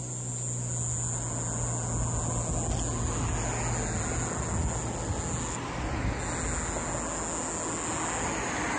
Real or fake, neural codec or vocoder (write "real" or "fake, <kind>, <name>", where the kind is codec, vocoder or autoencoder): real